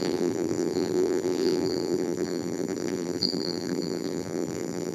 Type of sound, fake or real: fake